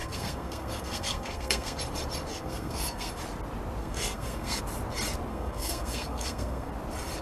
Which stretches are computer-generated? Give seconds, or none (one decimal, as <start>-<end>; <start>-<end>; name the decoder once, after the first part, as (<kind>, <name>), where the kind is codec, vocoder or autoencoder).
0.0-1.8 (codec, SNAC); 2.3-3.1; 3.8-4.6; 5.3-6.7